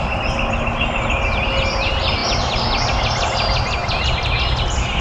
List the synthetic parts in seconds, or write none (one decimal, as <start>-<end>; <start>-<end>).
none